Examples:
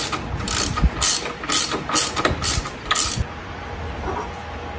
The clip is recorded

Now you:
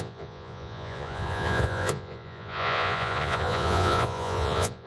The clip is remade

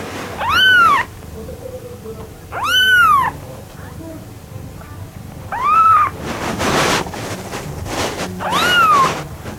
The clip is recorded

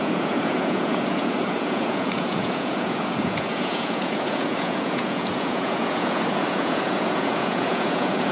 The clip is remade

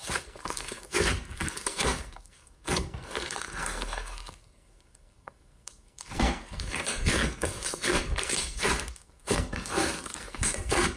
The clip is remade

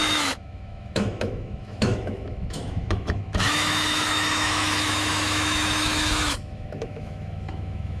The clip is remade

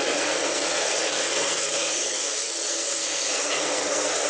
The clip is remade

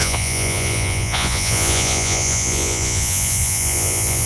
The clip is remade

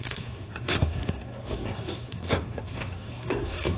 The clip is remade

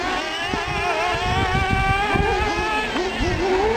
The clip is recorded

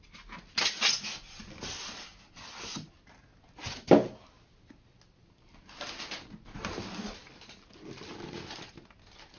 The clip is recorded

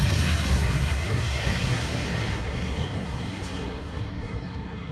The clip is remade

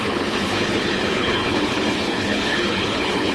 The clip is remade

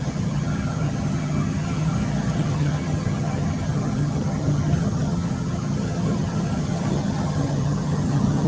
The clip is remade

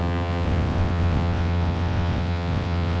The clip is remade